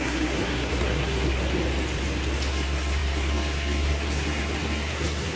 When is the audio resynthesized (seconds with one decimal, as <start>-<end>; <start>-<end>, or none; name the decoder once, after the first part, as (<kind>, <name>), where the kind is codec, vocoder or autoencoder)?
0.0-1.4 (codec, SNAC); 2.5-5.4